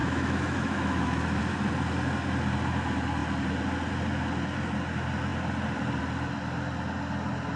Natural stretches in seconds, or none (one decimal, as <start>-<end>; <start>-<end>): 1.4-7.6